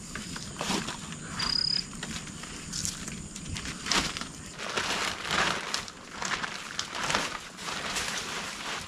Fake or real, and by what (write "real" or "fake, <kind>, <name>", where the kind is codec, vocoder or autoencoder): fake, vocoder, BigVGAN v2